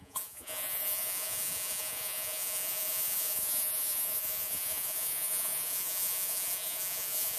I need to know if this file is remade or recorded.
remade